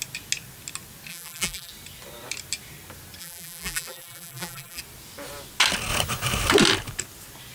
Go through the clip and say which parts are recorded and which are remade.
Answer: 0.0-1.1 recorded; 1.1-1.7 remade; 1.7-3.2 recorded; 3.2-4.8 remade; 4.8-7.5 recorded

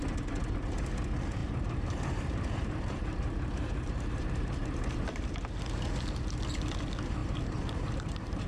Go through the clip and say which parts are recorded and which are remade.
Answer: 0.0-1.4 recorded; 1.4-6.4 remade; 6.4-7.2 recorded; 7.2-8.5 remade

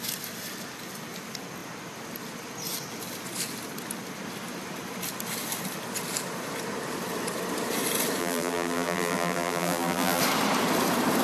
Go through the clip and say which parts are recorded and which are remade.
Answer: 0.0-8.2 recorded; 8.2-10.2 remade; 10.2-11.2 recorded